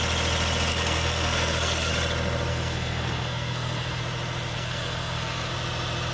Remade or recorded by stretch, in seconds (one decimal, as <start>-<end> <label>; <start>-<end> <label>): 0.0-0.7 recorded; 0.7-1.9 remade; 1.9-2.5 recorded; 2.5-4.0 remade; 4.0-4.5 recorded; 4.5-5.5 remade; 5.5-6.1 recorded